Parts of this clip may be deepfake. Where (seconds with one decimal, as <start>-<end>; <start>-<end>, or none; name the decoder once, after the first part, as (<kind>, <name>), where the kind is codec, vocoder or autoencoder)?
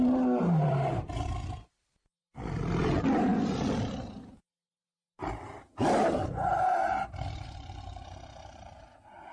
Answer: none